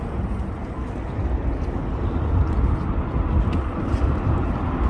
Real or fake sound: real